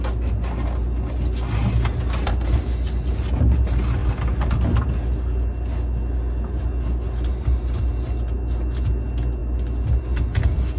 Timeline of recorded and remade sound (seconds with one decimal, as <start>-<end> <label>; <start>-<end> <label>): 0.0-10.8 recorded

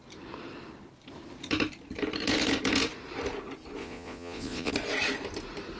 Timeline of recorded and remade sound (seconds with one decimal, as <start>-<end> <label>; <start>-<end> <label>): 0.0-3.8 recorded; 3.8-4.7 remade; 4.7-5.8 recorded

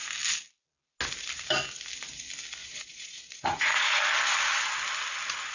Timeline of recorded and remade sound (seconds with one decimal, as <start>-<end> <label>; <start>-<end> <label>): 0.0-2.6 recorded; 2.6-4.0 remade; 4.0-5.5 recorded

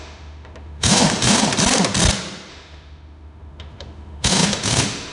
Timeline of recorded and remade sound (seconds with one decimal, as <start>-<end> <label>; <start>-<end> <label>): 0.0-1.5 remade; 1.5-2.5 recorded; 2.5-5.1 remade

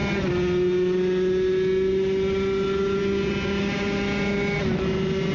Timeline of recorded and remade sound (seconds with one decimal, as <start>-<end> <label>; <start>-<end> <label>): 0.0-5.3 recorded

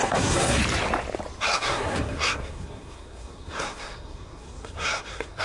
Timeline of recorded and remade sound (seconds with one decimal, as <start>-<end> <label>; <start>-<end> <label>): 0.0-0.6 remade; 0.6-1.4 recorded; 1.4-5.4 remade